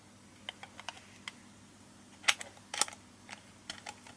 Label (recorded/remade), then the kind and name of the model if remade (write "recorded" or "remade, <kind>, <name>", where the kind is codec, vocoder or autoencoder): recorded